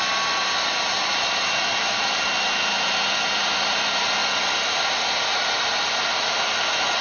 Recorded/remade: recorded